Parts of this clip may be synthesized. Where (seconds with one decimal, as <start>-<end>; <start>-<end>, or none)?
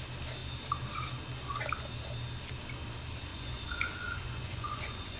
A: 3.3-5.2